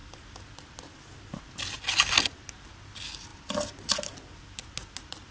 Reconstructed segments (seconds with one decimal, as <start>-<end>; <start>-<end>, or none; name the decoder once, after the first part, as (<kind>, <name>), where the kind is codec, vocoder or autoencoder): none